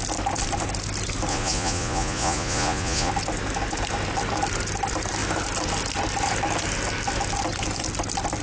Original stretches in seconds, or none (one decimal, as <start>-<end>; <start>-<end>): 0.0-1.3; 3.1-8.4